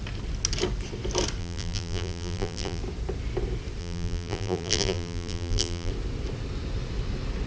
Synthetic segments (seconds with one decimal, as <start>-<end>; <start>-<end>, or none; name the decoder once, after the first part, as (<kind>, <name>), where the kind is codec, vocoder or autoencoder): 1.4-2.8 (vocoder, BigVGAN v2); 3.8-5.9